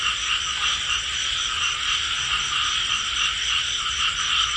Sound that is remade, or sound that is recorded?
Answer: recorded